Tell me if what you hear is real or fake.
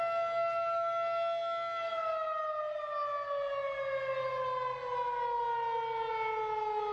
real